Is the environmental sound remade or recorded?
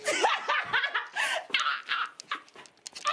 recorded